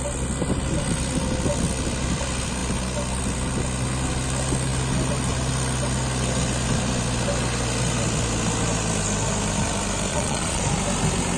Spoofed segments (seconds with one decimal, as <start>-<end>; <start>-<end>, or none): 10.1-10.6